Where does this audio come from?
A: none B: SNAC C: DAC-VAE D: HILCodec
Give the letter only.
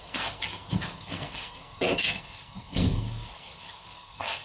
B